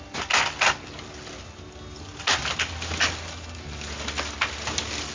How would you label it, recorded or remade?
recorded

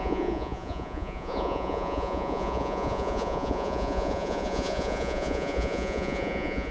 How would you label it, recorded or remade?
remade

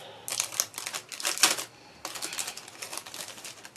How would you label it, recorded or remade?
recorded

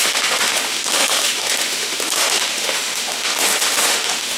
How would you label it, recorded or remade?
remade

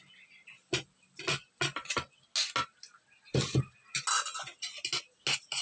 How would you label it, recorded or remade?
recorded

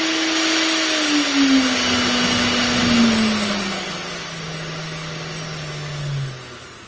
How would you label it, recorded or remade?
recorded